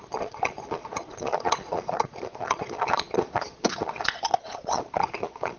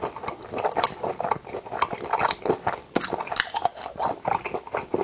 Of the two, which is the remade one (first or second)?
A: first